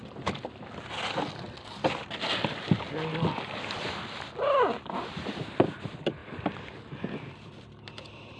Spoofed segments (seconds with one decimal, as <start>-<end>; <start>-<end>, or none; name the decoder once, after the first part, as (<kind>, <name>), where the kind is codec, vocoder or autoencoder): 4.8-8.4 (vocoder, BigVGAN v2)